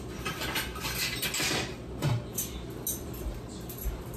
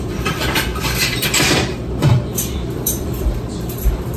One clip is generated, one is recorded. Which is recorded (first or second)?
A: first